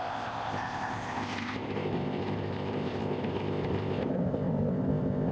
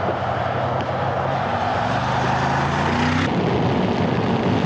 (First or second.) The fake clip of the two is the first